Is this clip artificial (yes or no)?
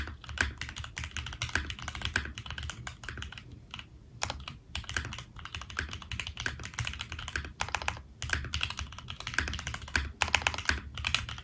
no